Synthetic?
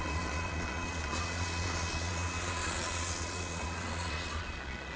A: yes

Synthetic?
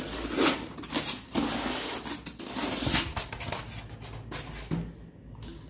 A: no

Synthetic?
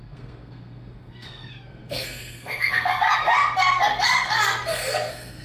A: yes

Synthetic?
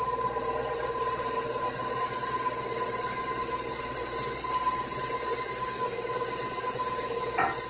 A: no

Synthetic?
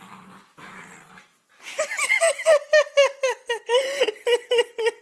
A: no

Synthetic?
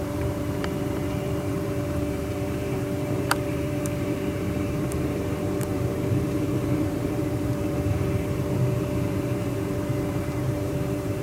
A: yes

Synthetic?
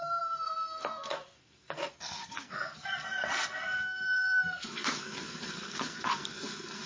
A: yes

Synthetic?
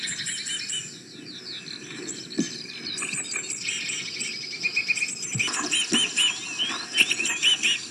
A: no